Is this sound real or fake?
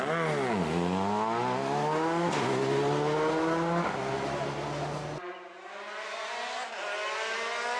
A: real